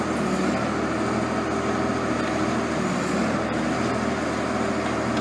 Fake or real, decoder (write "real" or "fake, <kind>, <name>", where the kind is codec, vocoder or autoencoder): real